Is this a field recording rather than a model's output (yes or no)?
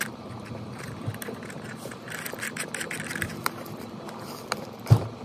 yes